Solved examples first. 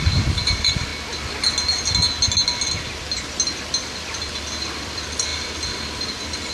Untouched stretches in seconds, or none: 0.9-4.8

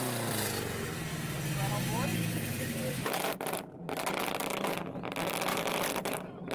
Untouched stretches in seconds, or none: 0.0-2.1; 4.2-5.5

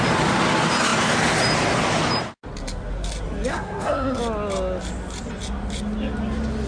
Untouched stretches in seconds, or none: 0.0-3.5; 4.2-6.7

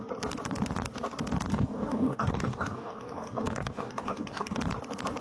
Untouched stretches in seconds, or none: 0.0-1.5; 4.6-5.2